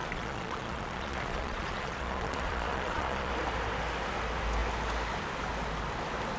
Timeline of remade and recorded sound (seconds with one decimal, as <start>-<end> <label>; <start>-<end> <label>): 0.0-3.3 remade; 3.3-6.4 recorded